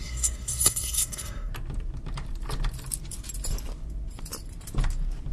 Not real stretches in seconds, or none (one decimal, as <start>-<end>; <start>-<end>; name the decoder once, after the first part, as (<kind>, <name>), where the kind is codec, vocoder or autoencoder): 0.0-1.5 (codec, SNAC)

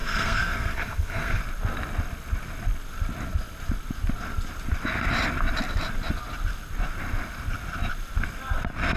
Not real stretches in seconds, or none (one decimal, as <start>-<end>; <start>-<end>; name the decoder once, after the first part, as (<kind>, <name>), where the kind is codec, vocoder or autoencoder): 0.0-1.4 (codec, SNAC)

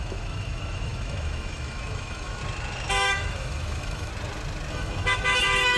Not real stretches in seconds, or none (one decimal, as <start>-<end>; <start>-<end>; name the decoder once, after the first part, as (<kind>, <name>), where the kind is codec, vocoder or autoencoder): 0.0-2.4 (autoencoder, DAC-VAE); 2.9-4.1; 4.7-5.8

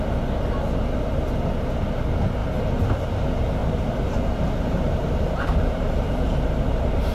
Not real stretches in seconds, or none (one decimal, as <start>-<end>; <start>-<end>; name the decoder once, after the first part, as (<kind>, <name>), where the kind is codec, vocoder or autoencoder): 3.6-7.1 (vocoder, BigVGAN v2)

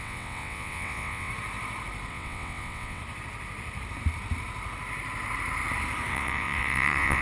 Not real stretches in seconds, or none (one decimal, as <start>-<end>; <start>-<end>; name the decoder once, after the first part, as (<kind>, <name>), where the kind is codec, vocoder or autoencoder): 0.0-1.3 (vocoder, WaveNeXt); 2.1-3.0; 6.1-7.2

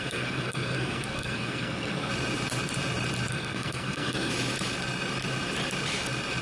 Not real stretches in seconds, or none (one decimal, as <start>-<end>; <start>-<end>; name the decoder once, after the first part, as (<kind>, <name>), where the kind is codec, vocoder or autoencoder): 0.0-2.1 (codec, SNAC); 3.3-4.3

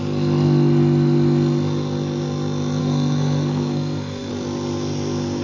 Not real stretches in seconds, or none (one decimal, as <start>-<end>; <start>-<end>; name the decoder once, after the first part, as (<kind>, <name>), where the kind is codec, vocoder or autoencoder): 2.8-4.3 (codec, SNAC)